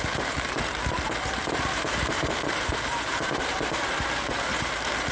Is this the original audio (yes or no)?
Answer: no